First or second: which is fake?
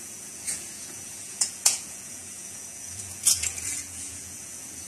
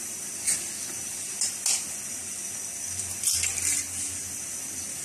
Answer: first